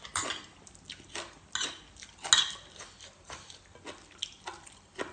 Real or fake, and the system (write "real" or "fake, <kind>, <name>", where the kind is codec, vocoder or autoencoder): real